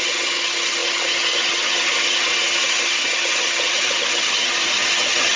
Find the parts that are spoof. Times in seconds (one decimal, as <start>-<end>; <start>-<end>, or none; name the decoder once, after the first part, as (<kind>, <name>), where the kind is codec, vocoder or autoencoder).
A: 0.0-5.4 (vocoder, HiFi-GAN)